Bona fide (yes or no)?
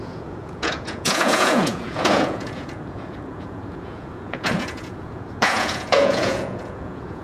no